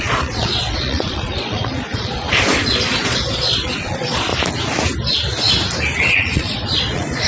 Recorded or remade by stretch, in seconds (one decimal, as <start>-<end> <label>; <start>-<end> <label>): 0.0-4.3 remade; 4.3-6.0 recorded; 6.0-7.3 remade